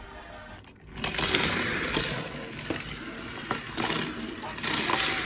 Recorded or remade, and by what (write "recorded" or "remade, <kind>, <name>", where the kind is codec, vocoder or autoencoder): recorded